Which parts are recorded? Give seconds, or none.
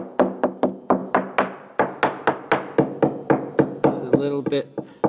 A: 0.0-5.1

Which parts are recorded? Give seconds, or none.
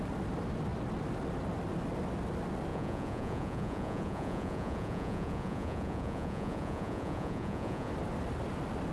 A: 0.0-2.7; 7.9-8.9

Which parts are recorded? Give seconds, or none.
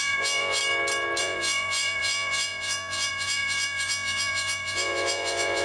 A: 0.6-1.2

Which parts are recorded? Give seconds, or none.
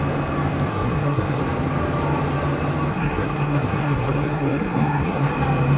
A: 0.0-0.7; 1.4-2.9; 5.3-5.8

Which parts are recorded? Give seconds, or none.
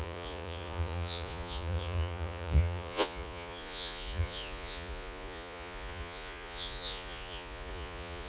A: none